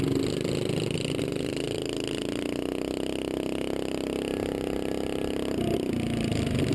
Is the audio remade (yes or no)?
no